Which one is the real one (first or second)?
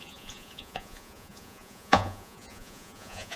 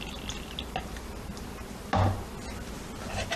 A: second